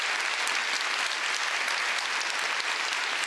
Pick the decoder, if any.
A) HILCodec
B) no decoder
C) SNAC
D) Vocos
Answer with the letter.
B